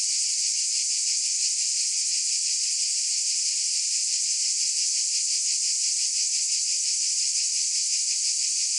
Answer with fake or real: real